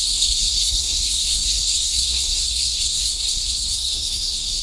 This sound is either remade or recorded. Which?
remade